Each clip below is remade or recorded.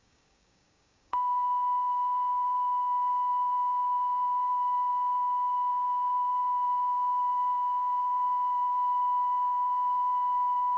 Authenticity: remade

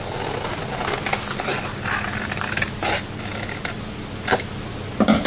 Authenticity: recorded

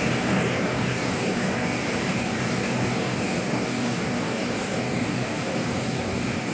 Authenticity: remade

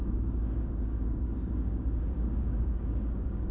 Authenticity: remade